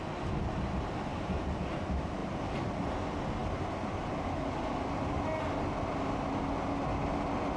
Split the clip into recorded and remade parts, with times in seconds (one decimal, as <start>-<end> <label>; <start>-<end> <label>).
0.0-1.1 recorded; 1.1-1.6 remade; 1.6-2.2 recorded; 2.2-2.7 remade; 2.7-7.6 recorded

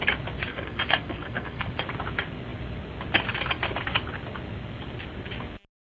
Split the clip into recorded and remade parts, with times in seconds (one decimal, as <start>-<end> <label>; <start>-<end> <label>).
0.0-0.5 recorded; 0.5-1.7 remade; 1.7-5.9 recorded